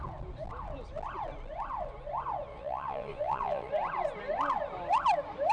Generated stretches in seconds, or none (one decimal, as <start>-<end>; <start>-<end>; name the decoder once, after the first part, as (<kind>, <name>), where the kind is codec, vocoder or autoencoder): 2.5-3.7 (vocoder, WaveNeXt)